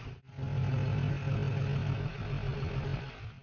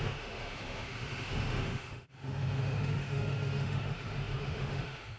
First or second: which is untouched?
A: first